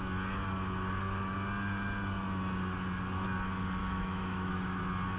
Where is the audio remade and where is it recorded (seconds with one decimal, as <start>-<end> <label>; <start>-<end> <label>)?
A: 0.0-3.8 recorded; 3.8-4.8 remade; 4.8-5.2 recorded